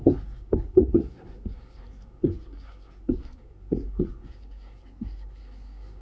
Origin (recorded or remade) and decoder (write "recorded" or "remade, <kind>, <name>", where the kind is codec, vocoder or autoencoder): remade, codec, SNAC